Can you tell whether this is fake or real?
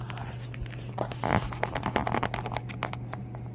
real